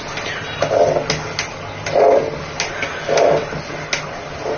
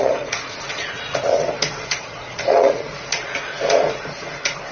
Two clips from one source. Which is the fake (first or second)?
second